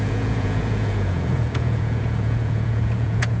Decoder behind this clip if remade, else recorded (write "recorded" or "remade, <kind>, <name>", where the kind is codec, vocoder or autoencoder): remade, vocoder, Vocos